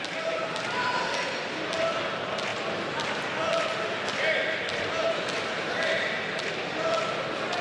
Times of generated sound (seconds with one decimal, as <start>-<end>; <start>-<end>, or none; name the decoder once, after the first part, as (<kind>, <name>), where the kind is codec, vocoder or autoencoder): none